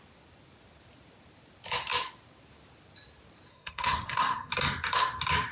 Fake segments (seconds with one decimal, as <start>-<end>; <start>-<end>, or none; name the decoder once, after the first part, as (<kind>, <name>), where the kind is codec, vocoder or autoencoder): 3.5-4.5 (codec, SNAC)